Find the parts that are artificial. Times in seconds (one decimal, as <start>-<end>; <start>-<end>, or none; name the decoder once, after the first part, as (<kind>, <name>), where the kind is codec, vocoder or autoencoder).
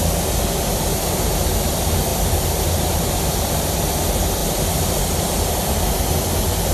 2.1-3.1 (vocoder, BigVGAN v2)